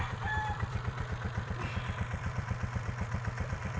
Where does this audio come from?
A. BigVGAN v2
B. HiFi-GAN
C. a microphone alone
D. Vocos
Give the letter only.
A